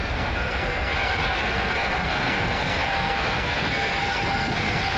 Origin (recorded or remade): remade